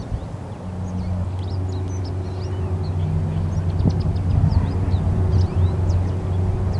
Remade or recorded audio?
recorded